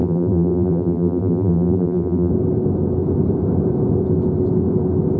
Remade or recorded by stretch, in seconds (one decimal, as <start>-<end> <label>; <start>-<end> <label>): 0.0-2.3 remade; 2.3-5.2 recorded